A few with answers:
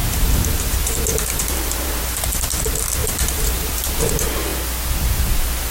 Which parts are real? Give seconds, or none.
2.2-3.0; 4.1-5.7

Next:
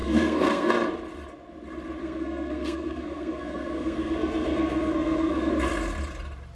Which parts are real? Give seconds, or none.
0.7-2.0; 5.5-6.5

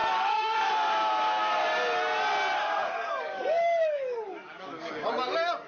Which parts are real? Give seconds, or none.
0.7-2.8; 4.9-5.7

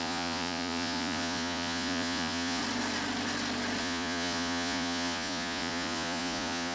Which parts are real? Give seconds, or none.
2.6-3.8

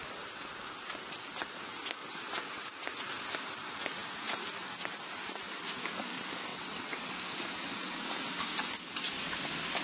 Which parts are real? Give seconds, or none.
0.0-6.5; 7.1-9.8

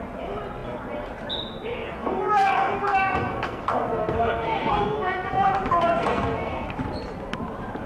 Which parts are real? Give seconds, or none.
0.0-2.0; 6.7-7.9

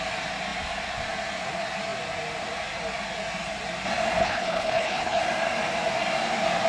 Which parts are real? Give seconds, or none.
0.0-4.2; 5.2-6.7